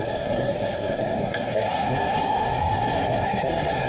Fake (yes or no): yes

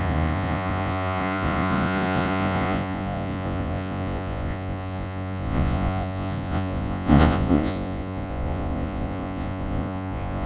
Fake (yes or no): yes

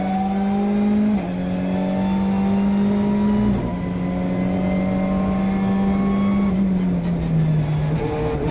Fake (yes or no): no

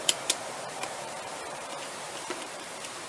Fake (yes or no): yes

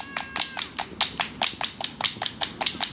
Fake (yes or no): no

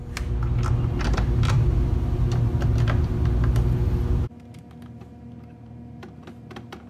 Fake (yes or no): no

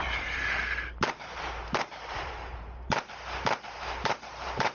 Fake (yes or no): yes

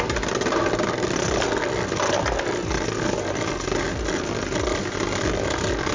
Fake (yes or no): no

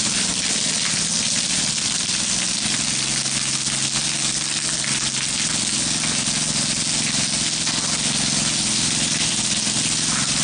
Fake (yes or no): no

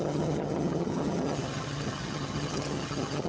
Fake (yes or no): yes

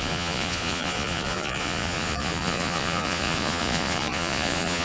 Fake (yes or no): yes